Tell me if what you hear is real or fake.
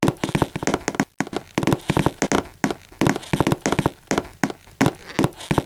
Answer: real